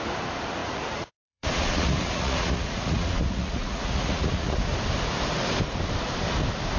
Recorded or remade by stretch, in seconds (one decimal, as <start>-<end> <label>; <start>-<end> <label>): 0.0-0.6 recorded; 0.6-4.7 remade; 4.7-6.8 recorded